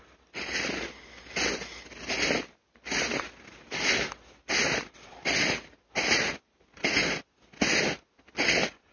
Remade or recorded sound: remade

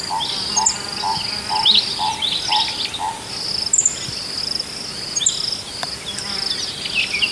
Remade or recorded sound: recorded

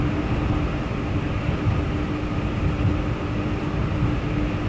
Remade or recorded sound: recorded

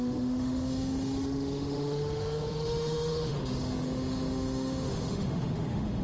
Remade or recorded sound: remade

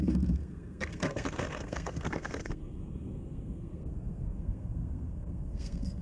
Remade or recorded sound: remade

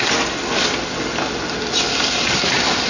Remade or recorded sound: recorded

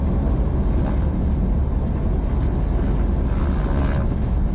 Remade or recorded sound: recorded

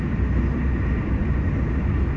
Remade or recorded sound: recorded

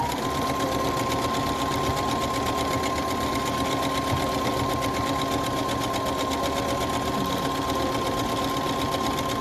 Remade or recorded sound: recorded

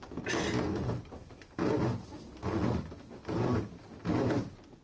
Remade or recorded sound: recorded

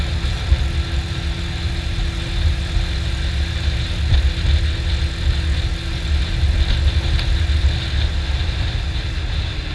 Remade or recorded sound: recorded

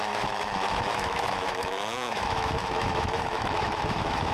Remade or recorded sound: remade